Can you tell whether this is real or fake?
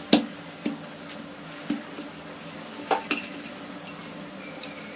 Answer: real